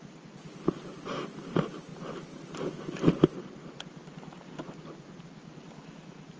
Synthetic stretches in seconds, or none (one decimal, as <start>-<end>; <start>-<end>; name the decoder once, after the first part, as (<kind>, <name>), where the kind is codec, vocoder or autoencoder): none

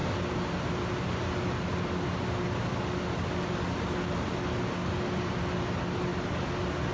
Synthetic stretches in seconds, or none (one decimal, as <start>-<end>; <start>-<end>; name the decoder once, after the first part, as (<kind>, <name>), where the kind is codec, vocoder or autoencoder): none

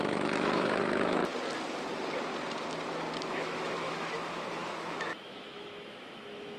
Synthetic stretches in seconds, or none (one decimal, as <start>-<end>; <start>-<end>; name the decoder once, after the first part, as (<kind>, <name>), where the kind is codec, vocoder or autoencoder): 0.0-1.2 (autoencoder, DAC-VAE); 3.3-6.6